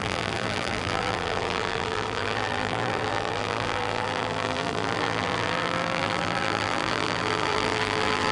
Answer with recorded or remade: remade